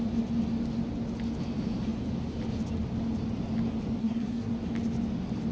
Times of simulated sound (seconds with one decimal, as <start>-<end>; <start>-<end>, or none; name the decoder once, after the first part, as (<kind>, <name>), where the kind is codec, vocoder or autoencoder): 4.0-4.5 (codec, SNAC)